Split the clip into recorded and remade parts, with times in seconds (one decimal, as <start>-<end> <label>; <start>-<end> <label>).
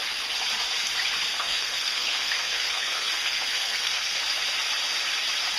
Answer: 0.0-1.3 recorded; 1.3-4.2 remade; 4.2-5.6 recorded